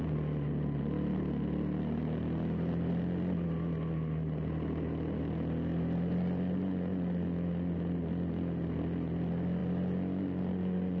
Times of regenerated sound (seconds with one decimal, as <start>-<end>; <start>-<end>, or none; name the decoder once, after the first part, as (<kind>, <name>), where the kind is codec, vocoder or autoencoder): none